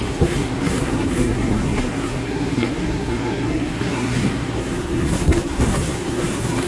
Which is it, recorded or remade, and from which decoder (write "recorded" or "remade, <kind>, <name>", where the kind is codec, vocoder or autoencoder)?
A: remade, codec, SNAC